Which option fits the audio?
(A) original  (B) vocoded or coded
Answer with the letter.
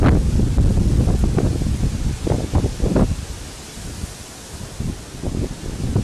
A